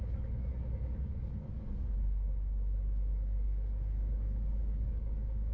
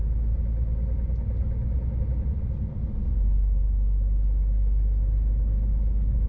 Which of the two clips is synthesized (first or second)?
first